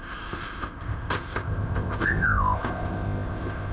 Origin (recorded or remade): remade